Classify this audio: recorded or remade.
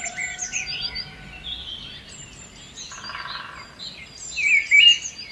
recorded